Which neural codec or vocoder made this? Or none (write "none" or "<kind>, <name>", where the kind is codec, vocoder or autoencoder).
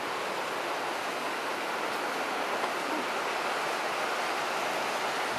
none